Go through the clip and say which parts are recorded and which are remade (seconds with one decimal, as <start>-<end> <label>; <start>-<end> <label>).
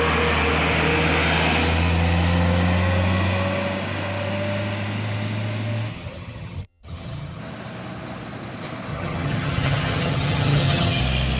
0.0-5.9 recorded; 5.9-7.4 remade; 7.4-8.9 recorded; 8.9-11.0 remade; 11.0-11.4 recorded